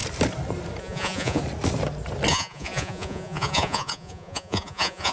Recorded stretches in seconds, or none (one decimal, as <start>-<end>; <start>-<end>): 0.0-0.8; 1.4-2.3